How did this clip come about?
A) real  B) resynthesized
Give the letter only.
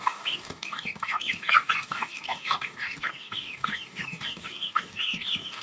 B